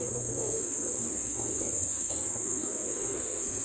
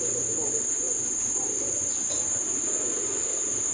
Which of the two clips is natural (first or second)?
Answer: second